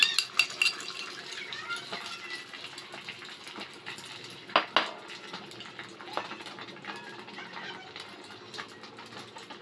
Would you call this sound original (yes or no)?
yes